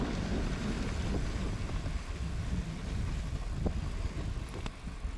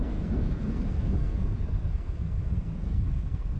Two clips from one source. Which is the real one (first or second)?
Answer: first